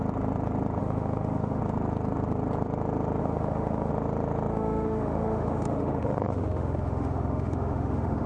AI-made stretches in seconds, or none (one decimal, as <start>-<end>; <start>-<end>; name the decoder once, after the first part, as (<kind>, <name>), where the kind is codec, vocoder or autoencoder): 0.8-1.6 (autoencoder, DAC-VAE); 3.2-3.9; 4.5-8.3